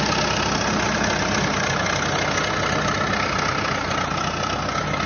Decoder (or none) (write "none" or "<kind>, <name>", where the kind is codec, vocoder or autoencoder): none